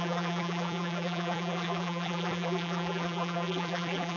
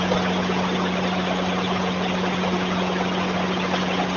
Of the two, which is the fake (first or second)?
first